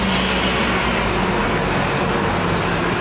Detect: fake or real real